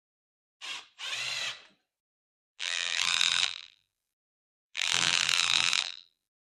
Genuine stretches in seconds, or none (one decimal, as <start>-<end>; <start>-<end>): 0.0-2.4